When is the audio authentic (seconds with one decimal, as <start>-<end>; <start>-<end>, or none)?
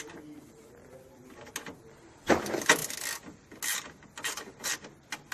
0.0-5.3